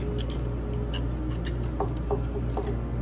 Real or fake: real